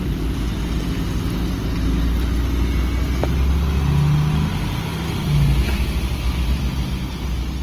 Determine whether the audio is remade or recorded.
recorded